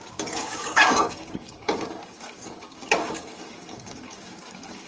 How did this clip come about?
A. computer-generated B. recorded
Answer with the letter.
A